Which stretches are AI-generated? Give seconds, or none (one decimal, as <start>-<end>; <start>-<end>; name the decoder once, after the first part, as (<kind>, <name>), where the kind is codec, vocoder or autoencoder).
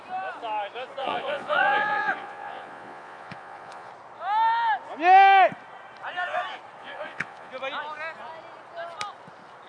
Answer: 1.0-3.9 (vocoder, Vocos); 6.8-7.5